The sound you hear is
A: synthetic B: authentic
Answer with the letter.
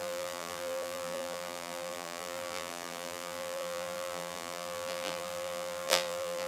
A